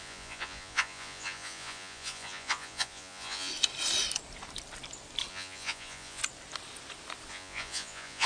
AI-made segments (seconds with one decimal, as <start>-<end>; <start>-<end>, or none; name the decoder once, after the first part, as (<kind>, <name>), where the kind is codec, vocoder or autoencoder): 0.0-3.5 (vocoder, Vocos); 5.3-6.2; 7.3-8.3